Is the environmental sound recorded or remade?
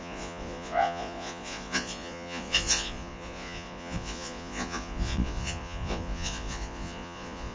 remade